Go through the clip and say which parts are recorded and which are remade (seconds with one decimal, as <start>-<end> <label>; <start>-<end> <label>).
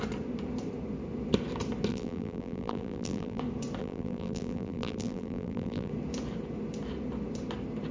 0.0-1.9 recorded; 1.9-3.4 remade; 3.4-3.8 recorded; 3.8-5.9 remade; 5.9-7.9 recorded